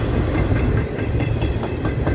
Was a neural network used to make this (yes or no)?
no